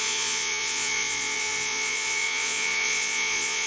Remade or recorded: remade